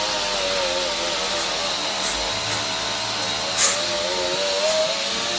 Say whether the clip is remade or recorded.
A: recorded